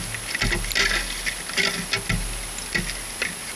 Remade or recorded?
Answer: recorded